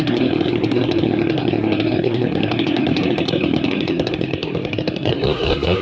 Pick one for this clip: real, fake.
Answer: fake